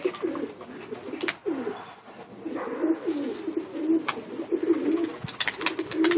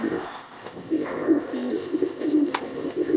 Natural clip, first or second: first